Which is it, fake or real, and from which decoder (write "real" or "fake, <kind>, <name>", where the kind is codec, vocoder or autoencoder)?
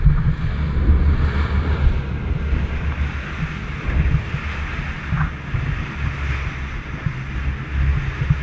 real